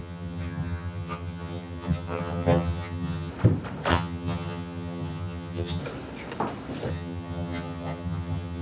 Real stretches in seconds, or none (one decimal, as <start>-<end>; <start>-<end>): 3.3-3.9; 5.8-6.9